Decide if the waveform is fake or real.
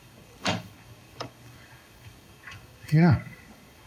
fake